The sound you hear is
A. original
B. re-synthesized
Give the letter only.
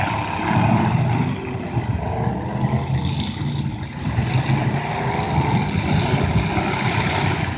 A